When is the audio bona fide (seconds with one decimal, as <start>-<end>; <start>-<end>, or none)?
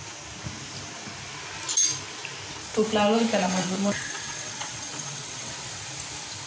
0.0-3.3; 5.5-6.5